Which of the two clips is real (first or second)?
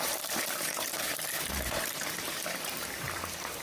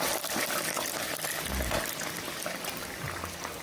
second